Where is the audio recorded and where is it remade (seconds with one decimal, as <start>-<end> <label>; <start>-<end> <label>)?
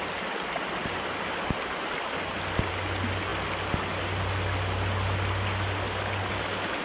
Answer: 0.0-6.8 recorded